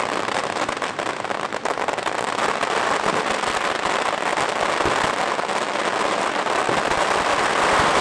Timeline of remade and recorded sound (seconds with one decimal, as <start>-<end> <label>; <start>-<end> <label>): 0.0-4.3 remade; 4.3-6.2 recorded; 6.2-8.0 remade